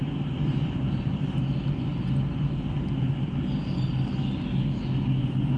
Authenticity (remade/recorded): recorded